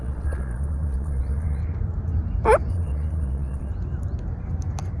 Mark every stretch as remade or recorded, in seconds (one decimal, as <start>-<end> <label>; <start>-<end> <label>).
0.0-1.6 remade; 1.6-2.7 recorded; 2.7-3.7 remade; 3.7-5.0 recorded